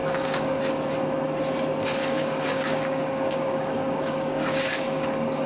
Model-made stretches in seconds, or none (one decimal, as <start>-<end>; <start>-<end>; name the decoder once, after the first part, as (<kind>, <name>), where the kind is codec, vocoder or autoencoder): 0.0-0.6 (codec, DAC); 2.0-5.5